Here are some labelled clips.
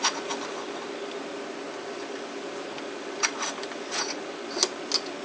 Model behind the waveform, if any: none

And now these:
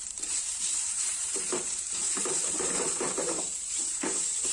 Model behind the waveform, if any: vocoder, BigVGAN v2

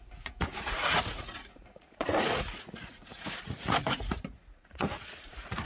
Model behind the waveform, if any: vocoder, Vocos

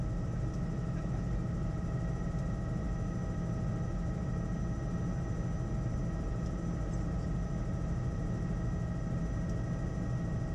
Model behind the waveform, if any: none